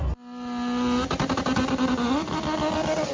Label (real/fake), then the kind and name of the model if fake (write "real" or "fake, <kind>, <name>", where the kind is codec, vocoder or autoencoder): real